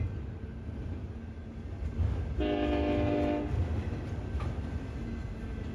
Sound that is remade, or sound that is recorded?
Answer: recorded